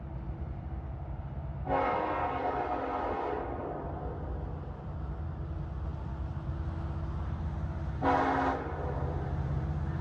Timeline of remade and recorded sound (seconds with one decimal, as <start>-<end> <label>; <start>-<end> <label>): 0.0-10.0 recorded